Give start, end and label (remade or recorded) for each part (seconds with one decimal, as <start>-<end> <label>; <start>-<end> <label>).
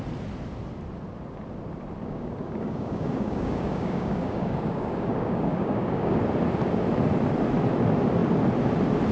0.0-2.0 recorded; 2.0-6.2 remade; 6.2-9.1 recorded